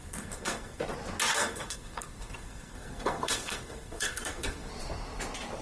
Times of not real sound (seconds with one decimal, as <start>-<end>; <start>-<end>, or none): 0.0-0.8; 1.3-4.7